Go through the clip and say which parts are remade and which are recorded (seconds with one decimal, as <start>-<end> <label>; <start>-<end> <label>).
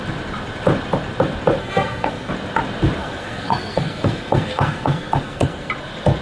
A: 0.0-1.6 recorded; 1.6-2.3 remade; 2.3-3.0 recorded; 3.0-5.7 remade; 5.7-6.2 recorded